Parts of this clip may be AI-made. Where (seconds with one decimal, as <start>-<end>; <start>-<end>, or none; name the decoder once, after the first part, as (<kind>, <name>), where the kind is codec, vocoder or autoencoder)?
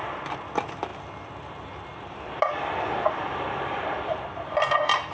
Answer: none